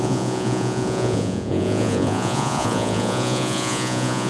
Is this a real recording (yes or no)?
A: no